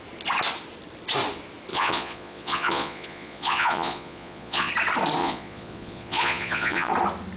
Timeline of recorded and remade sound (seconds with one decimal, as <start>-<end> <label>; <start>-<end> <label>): 0.0-1.7 recorded; 1.7-4.7 remade; 4.7-5.2 recorded; 5.2-6.9 remade; 6.9-7.4 recorded